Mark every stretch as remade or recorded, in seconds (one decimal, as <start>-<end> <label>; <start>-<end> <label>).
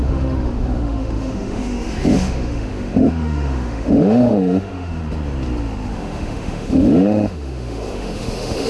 0.0-5.0 remade; 5.0-5.9 recorded; 5.9-8.7 remade